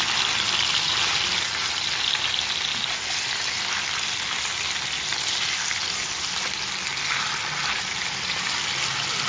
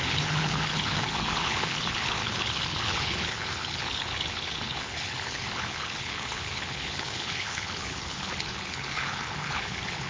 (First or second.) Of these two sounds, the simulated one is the second